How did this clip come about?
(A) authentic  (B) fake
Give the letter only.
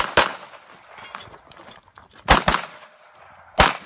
A